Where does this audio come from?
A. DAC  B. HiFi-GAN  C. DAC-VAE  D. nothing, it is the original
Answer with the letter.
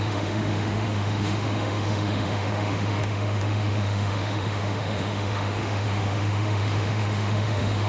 C